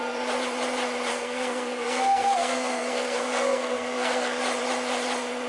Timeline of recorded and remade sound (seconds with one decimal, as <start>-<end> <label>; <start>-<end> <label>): 0.0-1.1 recorded; 1.1-4.4 remade; 4.4-5.5 recorded